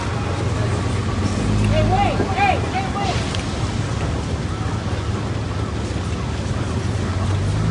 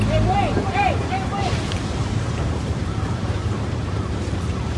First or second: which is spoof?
second